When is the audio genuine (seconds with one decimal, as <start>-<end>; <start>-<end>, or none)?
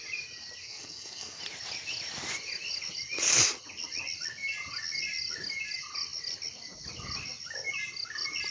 0.0-0.6; 1.4-8.5